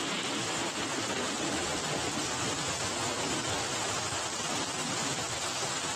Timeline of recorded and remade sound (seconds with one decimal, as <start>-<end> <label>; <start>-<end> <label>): 0.0-6.0 recorded